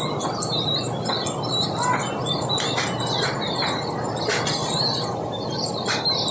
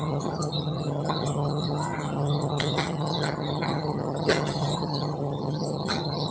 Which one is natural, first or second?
first